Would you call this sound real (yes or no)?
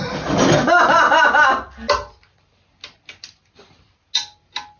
yes